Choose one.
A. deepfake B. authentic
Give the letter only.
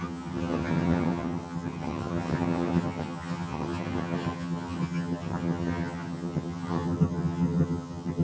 A